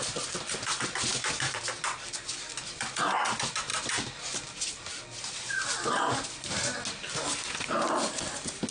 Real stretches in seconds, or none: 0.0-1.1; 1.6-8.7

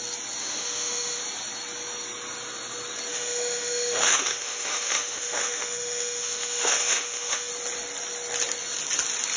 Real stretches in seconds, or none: 0.0-0.4; 1.2-3.1; 7.5-9.4

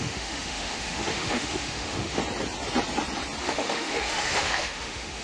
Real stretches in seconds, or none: 2.2-3.4